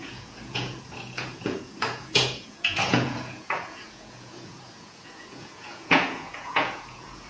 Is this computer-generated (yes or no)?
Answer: yes